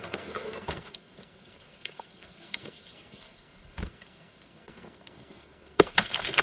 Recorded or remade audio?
remade